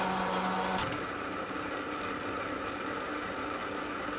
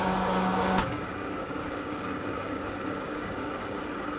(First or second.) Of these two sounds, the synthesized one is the second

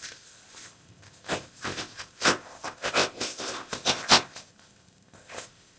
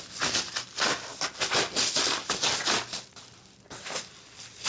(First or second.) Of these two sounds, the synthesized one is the first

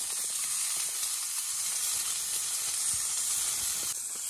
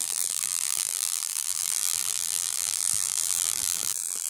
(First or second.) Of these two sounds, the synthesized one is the second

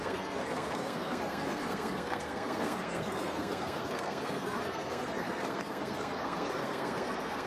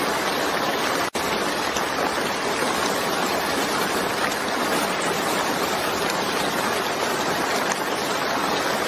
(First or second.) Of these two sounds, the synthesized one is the first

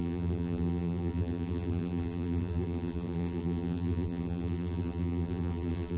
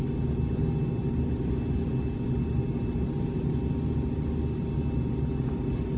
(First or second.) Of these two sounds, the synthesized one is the first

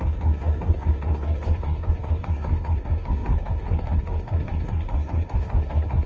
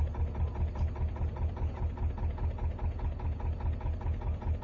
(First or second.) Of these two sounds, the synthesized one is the first